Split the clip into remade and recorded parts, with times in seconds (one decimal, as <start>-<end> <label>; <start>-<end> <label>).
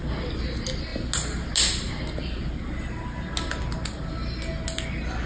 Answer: 0.0-5.3 recorded